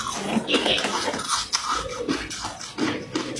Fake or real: real